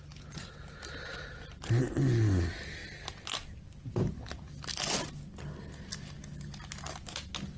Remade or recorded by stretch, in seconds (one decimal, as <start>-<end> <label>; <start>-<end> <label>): 0.0-7.6 recorded